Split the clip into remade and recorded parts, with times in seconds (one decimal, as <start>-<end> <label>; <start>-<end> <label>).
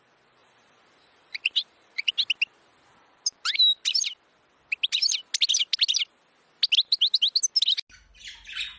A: 0.0-0.4 recorded; 0.4-2.1 remade; 2.1-8.8 recorded